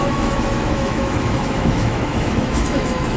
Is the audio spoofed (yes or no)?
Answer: yes